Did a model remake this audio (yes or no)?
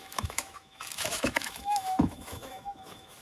yes